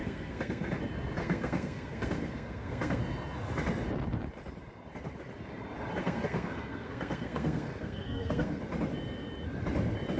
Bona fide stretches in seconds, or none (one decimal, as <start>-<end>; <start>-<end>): 0.7-1.2; 3.0-6.0; 8.6-10.2